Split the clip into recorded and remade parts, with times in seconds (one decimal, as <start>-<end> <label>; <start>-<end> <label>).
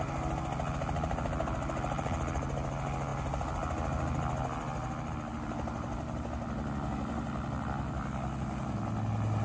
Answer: 0.0-9.4 recorded